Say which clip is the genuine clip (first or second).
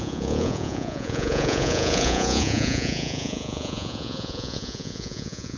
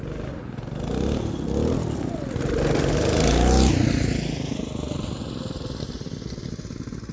second